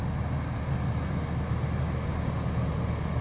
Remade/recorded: recorded